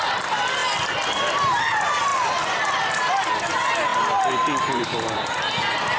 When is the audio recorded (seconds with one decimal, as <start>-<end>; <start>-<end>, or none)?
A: 0.0-2.1; 3.3-3.9; 5.4-6.0